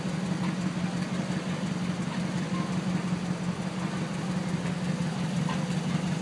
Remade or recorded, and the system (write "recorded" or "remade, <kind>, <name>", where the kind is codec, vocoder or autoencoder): recorded